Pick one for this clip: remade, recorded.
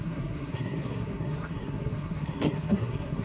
remade